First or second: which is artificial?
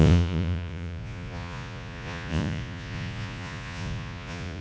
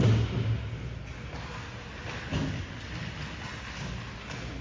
first